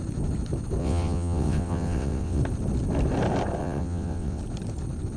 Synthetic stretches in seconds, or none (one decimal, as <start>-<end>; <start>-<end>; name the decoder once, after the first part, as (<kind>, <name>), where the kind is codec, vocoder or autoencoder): 0.8-2.4 (vocoder, WaveNeXt); 3.6-4.4